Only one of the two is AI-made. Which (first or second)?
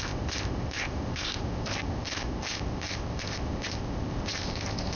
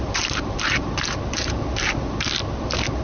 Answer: first